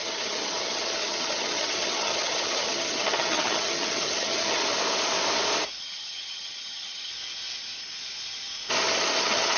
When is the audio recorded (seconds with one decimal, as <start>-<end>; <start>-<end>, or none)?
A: 4.6-5.8; 7.1-9.2